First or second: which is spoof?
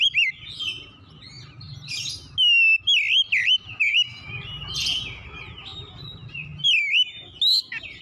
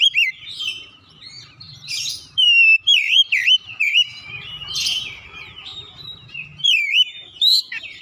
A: second